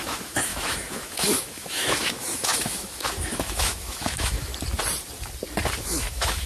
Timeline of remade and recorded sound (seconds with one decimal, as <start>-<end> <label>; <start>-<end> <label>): 0.0-4.5 remade; 4.5-5.8 recorded; 5.8-6.5 remade